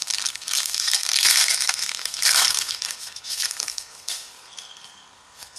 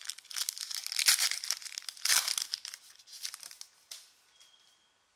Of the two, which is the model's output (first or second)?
first